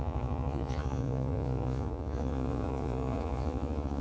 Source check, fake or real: fake